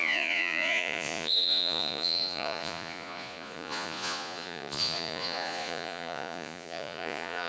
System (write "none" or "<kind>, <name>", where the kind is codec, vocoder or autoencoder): vocoder, Vocos